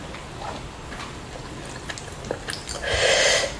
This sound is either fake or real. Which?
real